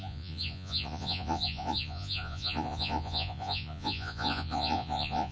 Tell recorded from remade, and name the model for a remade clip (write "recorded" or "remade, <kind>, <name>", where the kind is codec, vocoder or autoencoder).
remade, vocoder, Vocos